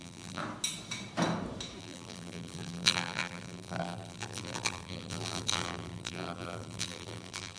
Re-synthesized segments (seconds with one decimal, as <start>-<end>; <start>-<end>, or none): 0.0-0.4; 1.8-7.6